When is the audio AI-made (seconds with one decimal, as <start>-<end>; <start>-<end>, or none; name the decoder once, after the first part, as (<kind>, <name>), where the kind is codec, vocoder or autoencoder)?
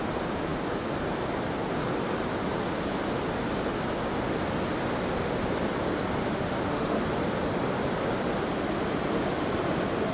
6.2-7.0 (autoencoder, DAC-VAE)